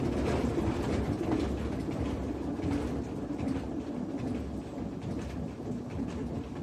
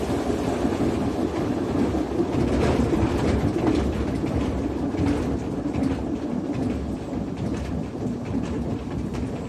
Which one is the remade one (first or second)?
second